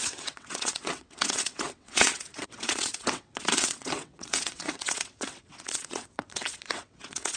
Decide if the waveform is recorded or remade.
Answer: remade